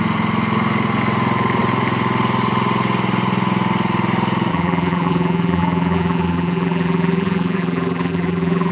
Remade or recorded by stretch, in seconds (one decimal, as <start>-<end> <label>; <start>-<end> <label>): 0.0-4.5 recorded; 4.5-8.7 remade